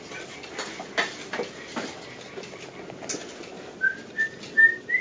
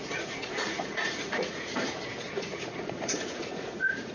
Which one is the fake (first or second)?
second